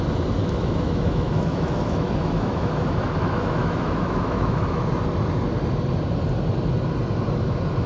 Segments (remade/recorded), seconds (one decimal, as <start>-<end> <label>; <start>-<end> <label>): 0.0-0.4 recorded; 0.4-4.9 remade; 4.9-7.9 recorded